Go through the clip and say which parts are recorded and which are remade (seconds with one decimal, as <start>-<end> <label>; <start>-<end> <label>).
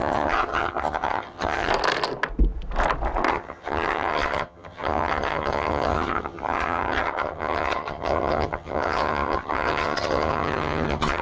0.0-1.7 remade; 1.7-3.3 recorded; 3.3-11.2 remade